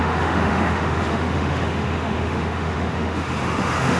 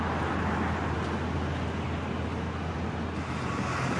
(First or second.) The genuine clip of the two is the second